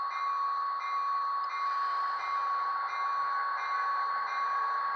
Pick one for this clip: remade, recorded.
recorded